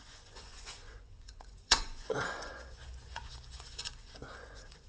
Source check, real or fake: fake